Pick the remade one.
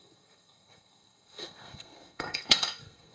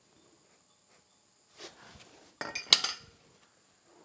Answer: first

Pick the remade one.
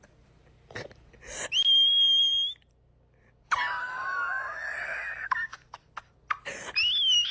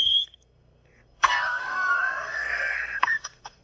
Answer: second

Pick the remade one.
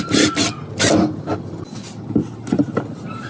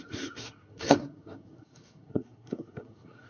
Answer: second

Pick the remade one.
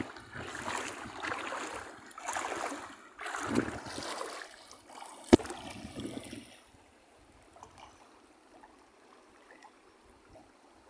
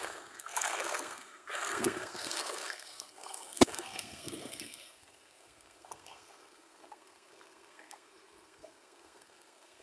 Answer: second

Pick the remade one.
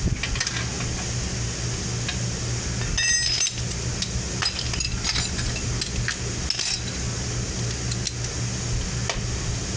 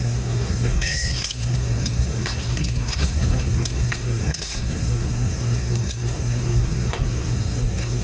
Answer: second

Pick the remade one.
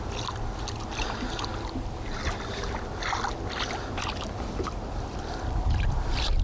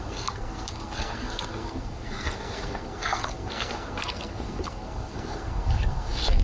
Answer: second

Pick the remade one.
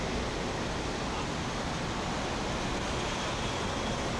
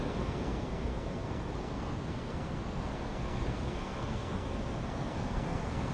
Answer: second